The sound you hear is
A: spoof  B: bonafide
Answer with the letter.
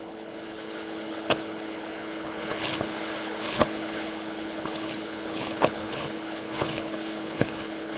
A